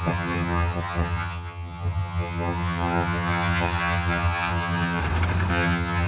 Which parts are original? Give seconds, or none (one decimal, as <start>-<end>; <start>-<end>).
5.0-5.5